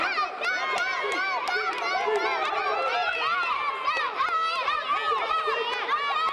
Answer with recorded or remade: recorded